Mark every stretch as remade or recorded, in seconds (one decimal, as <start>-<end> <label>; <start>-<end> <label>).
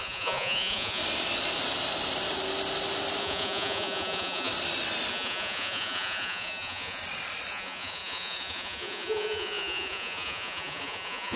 0.0-1.0 remade; 1.0-3.2 recorded; 3.2-4.5 remade; 4.5-5.1 recorded; 5.1-7.0 remade; 7.0-7.5 recorded; 7.5-11.4 remade